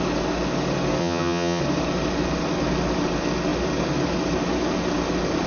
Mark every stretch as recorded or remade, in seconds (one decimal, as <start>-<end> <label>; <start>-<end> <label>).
0.0-1.0 recorded; 1.0-1.6 remade; 1.6-5.5 recorded